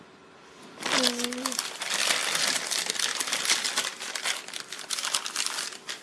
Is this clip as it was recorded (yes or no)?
yes